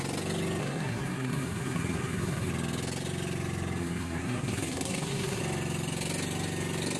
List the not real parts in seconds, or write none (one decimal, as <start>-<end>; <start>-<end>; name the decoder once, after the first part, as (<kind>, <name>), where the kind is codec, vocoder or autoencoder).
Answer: 0.6-2.5 (codec, SNAC); 3.8-5.4